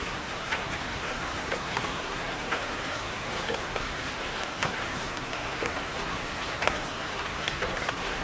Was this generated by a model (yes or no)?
yes